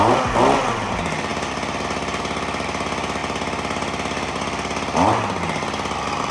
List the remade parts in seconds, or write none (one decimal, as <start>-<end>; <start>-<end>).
none

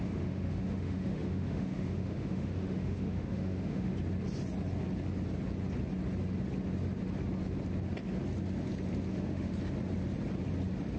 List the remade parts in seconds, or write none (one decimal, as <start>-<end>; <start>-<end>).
0.0-3.9; 9.1-9.5

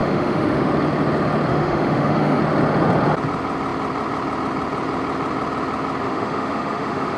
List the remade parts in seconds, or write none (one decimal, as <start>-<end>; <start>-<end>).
0.0-0.7; 1.5-2.4; 6.0-7.2

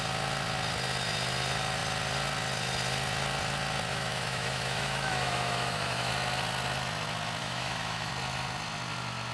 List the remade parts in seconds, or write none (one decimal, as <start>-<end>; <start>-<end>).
3.9-6.1; 7.4-8.1

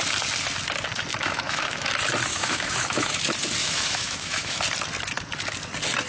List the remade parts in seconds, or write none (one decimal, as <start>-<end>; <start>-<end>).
1.1-1.9; 2.3-3.2; 3.6-4.6